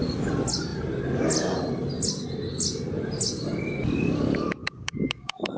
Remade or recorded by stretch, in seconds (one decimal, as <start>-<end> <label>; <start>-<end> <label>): 0.0-4.6 recorded; 4.6-5.6 remade